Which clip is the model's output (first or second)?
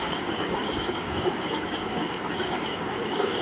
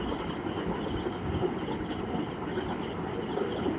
first